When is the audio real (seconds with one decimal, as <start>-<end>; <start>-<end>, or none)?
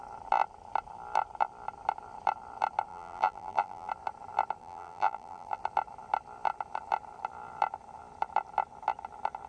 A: 0.0-2.9; 3.9-4.6; 5.6-9.5